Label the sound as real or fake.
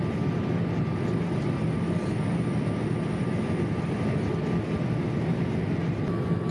real